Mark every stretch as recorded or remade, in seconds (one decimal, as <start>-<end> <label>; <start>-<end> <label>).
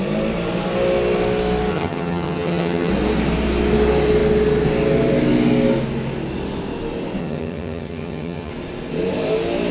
0.0-1.7 recorded; 1.7-2.9 remade; 2.9-7.2 recorded; 7.2-8.5 remade; 8.5-9.7 recorded